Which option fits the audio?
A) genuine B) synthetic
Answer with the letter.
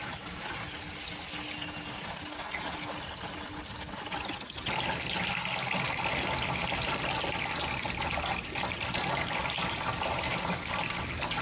A